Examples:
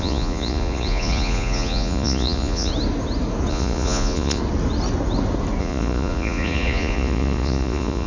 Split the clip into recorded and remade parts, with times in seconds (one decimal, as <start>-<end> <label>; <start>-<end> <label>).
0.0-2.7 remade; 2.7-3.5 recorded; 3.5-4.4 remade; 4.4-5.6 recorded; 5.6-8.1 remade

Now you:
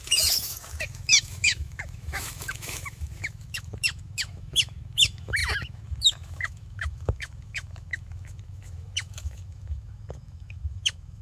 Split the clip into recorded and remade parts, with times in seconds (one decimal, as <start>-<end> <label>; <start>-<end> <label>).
0.0-11.2 remade

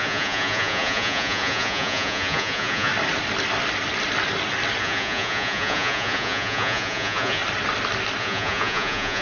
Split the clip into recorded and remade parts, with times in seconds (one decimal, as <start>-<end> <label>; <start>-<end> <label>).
0.0-2.9 remade; 2.9-4.8 recorded; 4.8-7.4 remade; 7.4-8.2 recorded; 8.2-9.2 remade

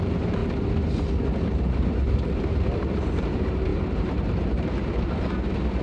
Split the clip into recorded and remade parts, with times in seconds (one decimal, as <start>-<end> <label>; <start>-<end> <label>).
0.0-0.4 remade; 0.4-1.6 recorded; 1.6-5.8 remade

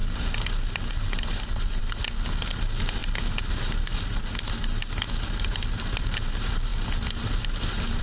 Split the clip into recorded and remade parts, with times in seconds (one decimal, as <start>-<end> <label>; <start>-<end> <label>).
0.0-8.0 recorded

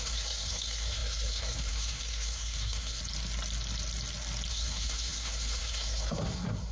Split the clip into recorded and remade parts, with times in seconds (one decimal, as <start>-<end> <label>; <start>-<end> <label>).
0.0-3.0 remade; 3.0-4.5 recorded; 4.5-6.7 remade

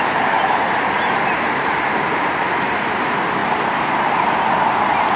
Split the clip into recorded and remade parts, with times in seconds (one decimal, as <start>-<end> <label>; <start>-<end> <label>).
0.0-3.4 remade; 3.4-5.2 recorded